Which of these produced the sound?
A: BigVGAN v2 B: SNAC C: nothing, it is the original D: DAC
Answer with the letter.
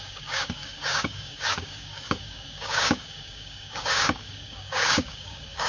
D